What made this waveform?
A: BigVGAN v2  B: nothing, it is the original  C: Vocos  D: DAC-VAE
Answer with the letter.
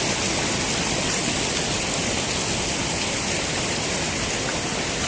B